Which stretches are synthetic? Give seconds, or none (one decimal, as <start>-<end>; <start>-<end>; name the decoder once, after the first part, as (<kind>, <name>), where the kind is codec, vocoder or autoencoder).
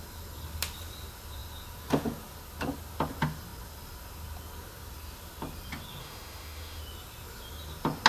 6.0-6.8 (autoencoder, DAC-VAE)